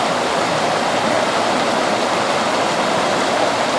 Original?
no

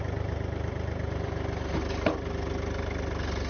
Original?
yes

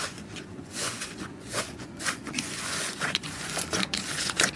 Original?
no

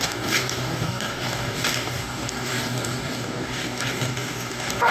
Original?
no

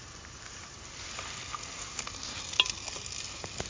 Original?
yes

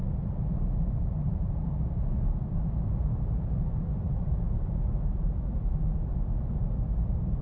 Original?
no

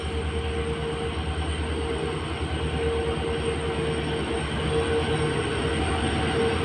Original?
yes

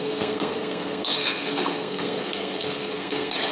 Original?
no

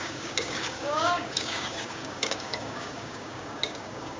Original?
no